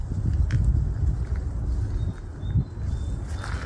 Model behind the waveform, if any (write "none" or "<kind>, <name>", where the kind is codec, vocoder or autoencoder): none